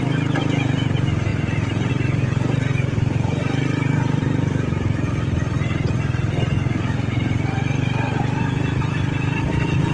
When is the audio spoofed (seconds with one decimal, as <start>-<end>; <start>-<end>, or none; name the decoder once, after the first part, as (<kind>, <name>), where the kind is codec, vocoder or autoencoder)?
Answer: none